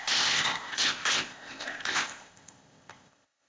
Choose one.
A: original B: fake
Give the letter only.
B